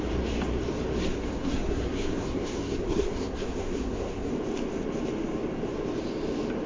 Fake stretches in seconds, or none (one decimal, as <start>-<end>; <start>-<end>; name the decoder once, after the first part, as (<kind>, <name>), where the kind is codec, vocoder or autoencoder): 1.1-4.3 (codec, SNAC)